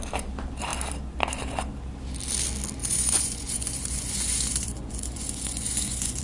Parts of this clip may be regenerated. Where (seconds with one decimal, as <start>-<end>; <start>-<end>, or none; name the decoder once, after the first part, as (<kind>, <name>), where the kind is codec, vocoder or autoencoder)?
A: 2.8-6.2 (vocoder, Vocos)